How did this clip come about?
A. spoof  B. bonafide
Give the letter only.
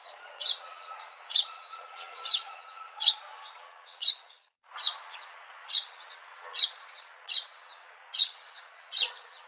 A